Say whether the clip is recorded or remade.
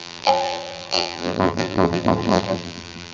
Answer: remade